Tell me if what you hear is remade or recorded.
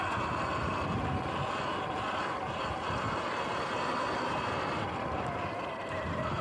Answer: recorded